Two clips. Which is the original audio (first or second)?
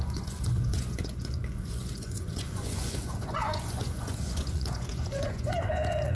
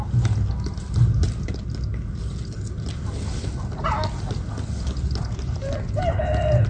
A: second